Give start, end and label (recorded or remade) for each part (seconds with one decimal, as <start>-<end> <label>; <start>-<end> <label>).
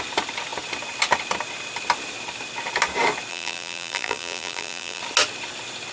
0.0-3.3 recorded; 3.3-5.0 remade; 5.0-5.9 recorded